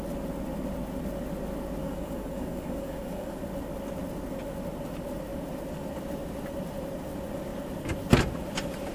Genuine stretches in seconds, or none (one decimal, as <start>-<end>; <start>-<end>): 0.0-1.8; 3.4-8.9